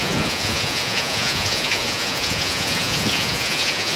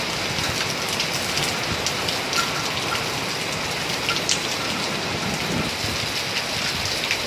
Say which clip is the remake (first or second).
first